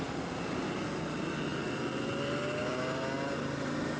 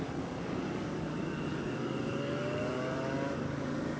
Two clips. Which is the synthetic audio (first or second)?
second